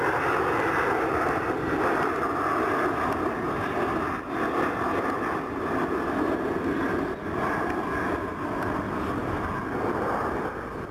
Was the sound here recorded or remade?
recorded